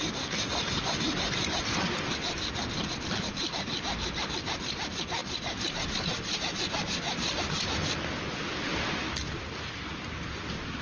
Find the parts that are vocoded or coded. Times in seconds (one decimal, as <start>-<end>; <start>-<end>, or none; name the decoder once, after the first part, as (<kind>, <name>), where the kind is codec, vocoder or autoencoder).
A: none